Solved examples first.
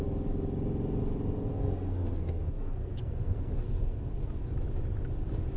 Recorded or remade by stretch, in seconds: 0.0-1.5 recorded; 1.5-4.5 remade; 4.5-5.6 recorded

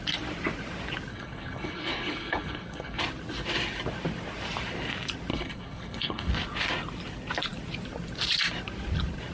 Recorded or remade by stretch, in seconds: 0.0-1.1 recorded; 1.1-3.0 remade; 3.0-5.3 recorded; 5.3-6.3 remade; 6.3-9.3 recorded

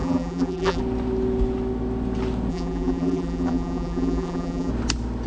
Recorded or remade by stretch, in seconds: 0.0-0.8 remade; 0.8-2.5 recorded; 2.5-4.7 remade; 4.7-5.3 recorded

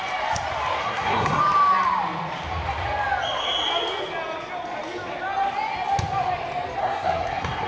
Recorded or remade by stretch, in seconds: 0.0-0.8 recorded; 0.8-1.4 remade; 1.4-6.8 recorded; 6.8-7.7 remade